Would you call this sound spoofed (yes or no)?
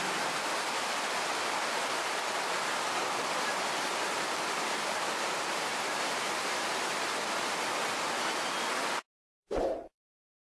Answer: yes